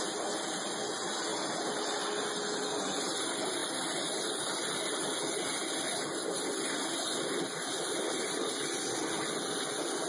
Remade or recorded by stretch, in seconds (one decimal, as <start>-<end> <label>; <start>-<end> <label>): 0.0-3.6 recorded; 3.6-4.4 remade; 4.4-10.1 recorded